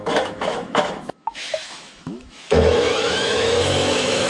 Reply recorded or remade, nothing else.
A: remade